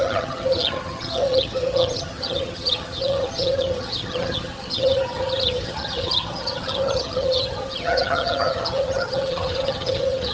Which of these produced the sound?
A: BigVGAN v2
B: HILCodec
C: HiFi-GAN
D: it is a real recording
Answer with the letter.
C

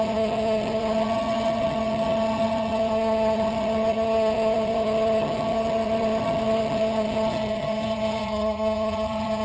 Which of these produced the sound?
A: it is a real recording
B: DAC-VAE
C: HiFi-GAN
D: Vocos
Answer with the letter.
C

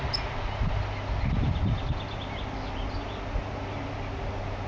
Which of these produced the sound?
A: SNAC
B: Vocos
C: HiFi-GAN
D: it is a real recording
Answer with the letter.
D